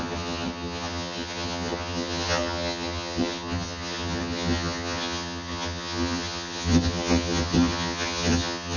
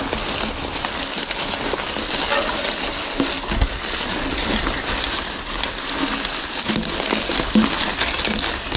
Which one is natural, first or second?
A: second